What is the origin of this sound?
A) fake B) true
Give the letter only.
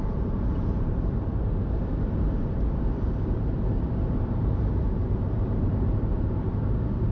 A